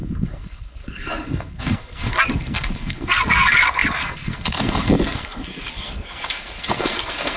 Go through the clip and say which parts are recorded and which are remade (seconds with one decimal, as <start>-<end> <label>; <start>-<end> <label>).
0.0-7.4 remade